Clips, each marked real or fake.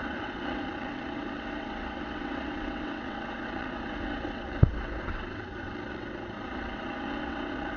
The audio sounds fake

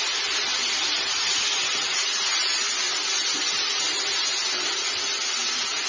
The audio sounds real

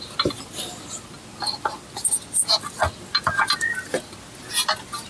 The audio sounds real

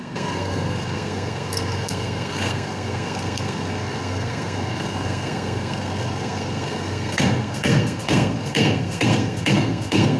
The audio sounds fake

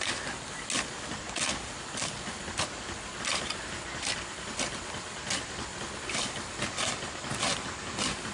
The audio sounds real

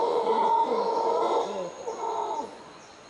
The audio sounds fake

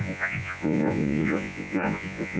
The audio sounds fake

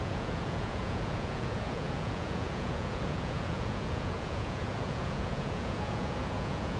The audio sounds fake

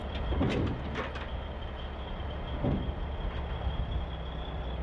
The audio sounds real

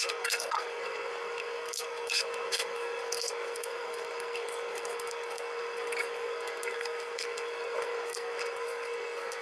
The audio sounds fake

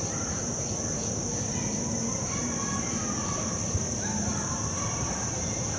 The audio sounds fake